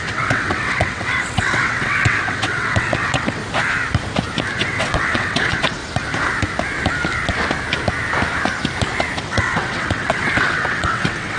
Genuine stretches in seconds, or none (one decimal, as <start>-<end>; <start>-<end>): 3.4-4.5; 5.8-9.2